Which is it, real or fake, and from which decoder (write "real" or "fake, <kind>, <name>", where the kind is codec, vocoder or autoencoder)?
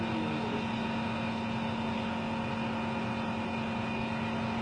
real